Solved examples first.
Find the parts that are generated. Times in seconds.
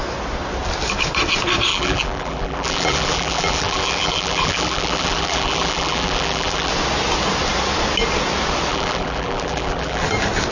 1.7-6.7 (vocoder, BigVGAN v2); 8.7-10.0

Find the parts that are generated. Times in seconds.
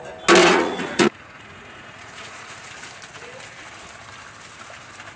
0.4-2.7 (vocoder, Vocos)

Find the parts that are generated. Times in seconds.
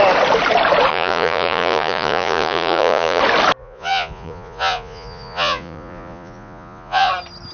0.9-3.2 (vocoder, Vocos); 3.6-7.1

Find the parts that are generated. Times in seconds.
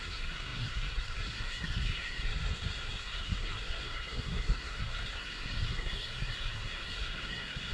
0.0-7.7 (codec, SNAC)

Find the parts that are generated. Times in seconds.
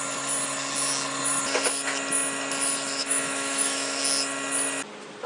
3.0-4.0 (autoencoder, DAC-VAE)